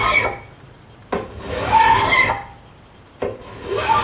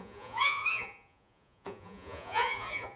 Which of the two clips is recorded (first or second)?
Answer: first